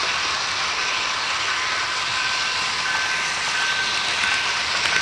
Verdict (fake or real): real